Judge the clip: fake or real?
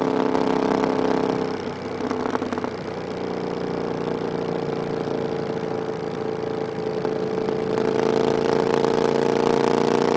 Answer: real